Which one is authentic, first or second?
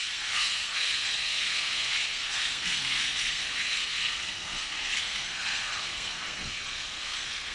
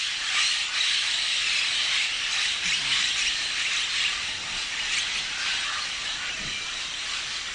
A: second